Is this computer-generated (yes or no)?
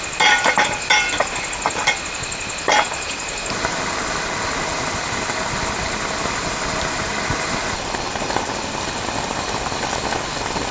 no